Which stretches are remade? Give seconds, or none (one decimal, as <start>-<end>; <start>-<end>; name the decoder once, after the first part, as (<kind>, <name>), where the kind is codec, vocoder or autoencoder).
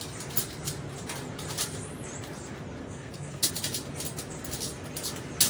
2.8-3.5 (codec, SNAC)